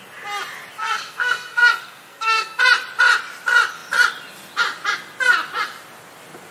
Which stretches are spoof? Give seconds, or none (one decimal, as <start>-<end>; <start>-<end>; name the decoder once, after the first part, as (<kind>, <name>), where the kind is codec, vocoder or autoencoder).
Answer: 0.8-2.6 (codec, SNAC)